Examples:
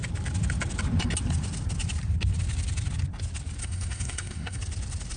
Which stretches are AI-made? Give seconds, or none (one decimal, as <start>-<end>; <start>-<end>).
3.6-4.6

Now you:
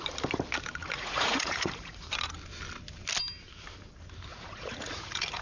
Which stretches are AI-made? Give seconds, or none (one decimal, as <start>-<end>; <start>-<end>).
0.8-2.1; 4.3-5.4

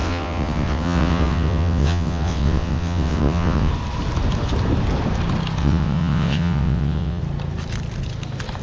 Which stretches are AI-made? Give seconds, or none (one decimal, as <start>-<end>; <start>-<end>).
0.0-3.7; 5.6-7.2

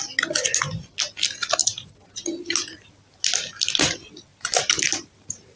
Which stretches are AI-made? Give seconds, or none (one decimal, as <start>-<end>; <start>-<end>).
1.6-2.9; 4.3-5.6

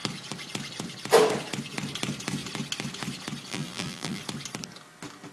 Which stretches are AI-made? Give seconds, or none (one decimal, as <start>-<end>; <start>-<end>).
3.5-4.2

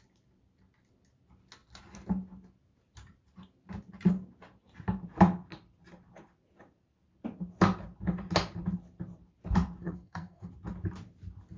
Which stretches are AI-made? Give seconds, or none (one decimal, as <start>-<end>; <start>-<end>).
9.8-10.5